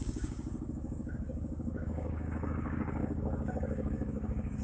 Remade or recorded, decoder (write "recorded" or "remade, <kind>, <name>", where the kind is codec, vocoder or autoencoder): remade, codec, DAC